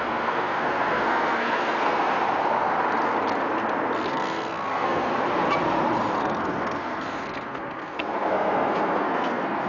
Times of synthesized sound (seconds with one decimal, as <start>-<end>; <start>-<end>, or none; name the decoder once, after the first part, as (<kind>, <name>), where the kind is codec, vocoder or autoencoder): 0.0-2.1 (codec, SNAC); 4.1-5.1; 6.2-9.7